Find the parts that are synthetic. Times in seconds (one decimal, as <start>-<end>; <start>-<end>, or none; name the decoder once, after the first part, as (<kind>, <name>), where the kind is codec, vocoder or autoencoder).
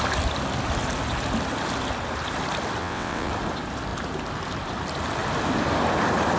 2.8-3.3 (vocoder, WaveNeXt)